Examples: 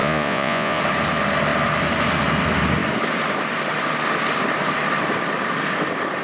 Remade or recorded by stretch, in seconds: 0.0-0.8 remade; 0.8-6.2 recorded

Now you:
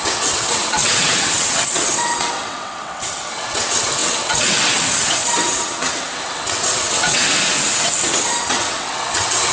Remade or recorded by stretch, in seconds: 0.0-9.5 remade

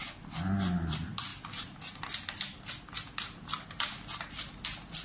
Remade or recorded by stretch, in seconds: 0.0-5.0 recorded

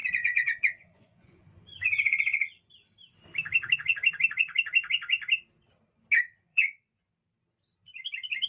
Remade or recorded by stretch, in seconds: 0.0-2.6 remade; 2.6-6.5 recorded; 6.5-7.1 remade; 7.1-8.5 recorded

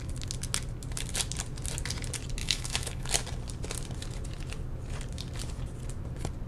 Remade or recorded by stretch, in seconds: 0.0-2.4 recorded; 2.4-3.1 remade; 3.1-6.5 recorded

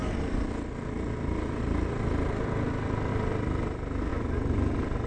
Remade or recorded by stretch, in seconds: 0.0-4.1 recorded; 4.1-5.1 remade

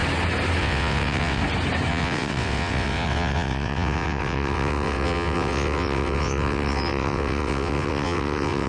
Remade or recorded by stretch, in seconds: 0.0-0.6 recorded; 0.6-1.4 remade; 1.4-1.9 recorded; 1.9-8.7 remade